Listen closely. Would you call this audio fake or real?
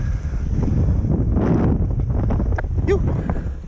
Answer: real